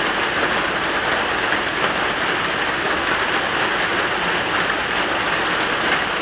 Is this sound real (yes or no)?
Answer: yes